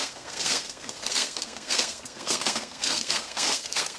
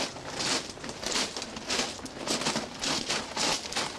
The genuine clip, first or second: second